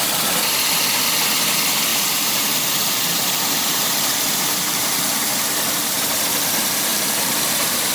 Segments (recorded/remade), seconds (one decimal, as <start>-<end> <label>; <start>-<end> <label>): 0.0-1.9 recorded; 1.9-6.2 remade; 6.2-6.9 recorded; 6.9-7.9 remade